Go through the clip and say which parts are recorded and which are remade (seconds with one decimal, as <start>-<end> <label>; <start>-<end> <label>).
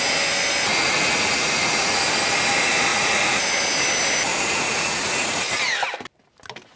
0.0-0.7 recorded; 0.7-2.0 remade; 2.0-2.9 recorded; 2.9-3.4 remade; 3.4-4.3 recorded; 4.3-5.4 remade; 5.4-6.8 recorded